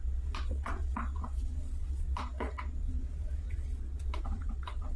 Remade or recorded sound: remade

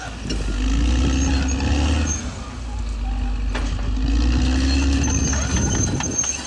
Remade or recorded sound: recorded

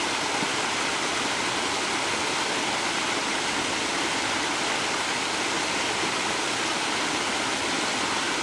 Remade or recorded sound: recorded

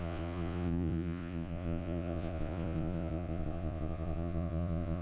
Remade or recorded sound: remade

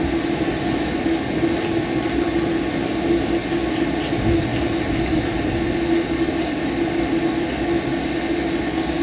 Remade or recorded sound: recorded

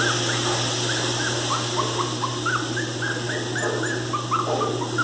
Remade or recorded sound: recorded